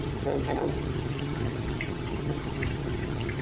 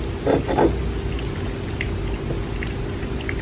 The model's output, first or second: first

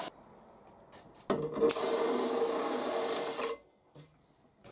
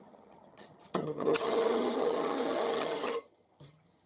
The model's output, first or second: second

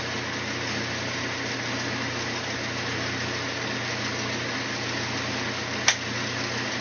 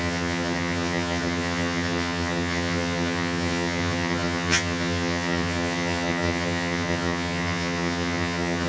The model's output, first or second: second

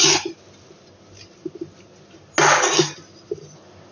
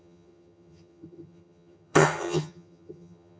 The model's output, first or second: second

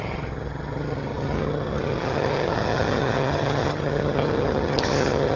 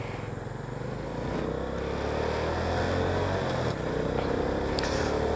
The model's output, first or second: first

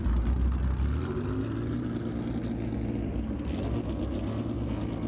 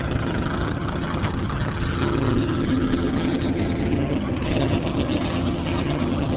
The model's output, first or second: second